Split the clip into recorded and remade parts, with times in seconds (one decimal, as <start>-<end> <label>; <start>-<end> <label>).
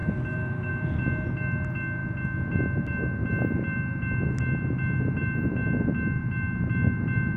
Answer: 0.0-7.4 recorded